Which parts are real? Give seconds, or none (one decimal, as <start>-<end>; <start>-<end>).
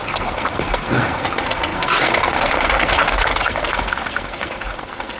none